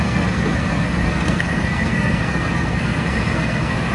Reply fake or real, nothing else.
fake